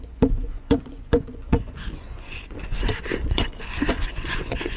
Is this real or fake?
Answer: fake